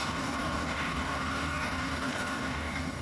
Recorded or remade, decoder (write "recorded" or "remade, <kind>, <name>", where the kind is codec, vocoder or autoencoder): remade, codec, DAC